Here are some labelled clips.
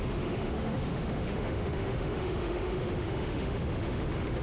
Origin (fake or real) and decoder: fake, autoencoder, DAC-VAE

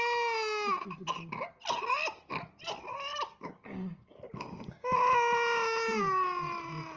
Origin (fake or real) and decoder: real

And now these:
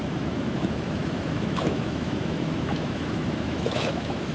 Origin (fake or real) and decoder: fake, autoencoder, DAC-VAE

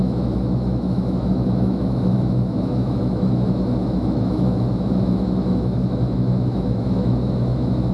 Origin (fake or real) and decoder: fake, autoencoder, DAC-VAE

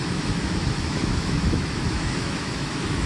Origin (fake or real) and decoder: fake, autoencoder, DAC-VAE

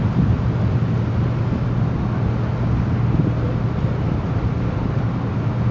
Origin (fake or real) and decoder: real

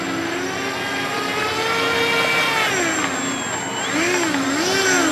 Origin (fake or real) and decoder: real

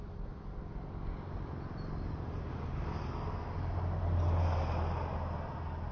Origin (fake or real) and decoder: real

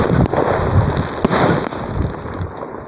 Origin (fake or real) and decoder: real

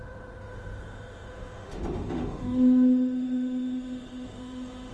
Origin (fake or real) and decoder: fake, autoencoder, DAC-VAE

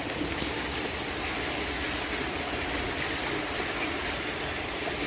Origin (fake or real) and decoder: real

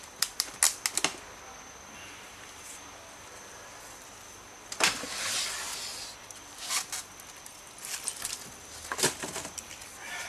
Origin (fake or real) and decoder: real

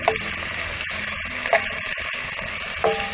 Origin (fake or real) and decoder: real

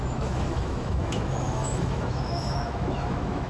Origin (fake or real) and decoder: fake, autoencoder, DAC-VAE